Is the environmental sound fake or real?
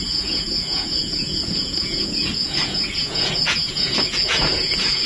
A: fake